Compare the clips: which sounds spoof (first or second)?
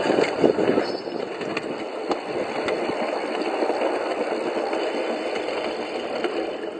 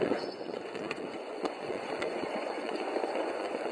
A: second